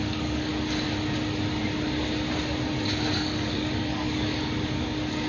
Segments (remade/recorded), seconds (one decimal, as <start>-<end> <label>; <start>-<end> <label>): 0.0-0.5 remade; 0.5-3.1 recorded; 3.1-5.3 remade